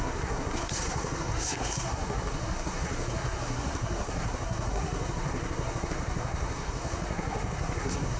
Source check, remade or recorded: remade